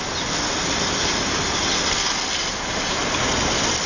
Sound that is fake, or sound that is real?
real